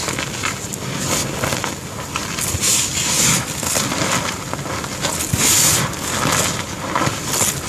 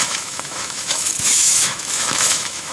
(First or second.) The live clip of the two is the first